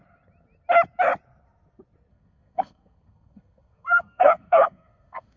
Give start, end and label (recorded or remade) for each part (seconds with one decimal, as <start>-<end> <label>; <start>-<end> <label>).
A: 0.0-2.1 recorded; 2.1-5.4 remade